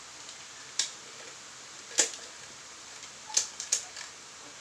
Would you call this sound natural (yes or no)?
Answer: yes